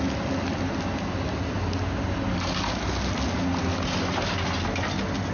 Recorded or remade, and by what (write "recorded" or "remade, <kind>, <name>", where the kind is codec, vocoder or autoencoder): recorded